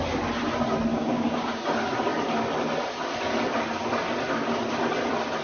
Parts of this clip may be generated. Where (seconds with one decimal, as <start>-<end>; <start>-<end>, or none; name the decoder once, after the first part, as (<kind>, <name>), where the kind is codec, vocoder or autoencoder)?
0.9-1.6 (codec, DAC)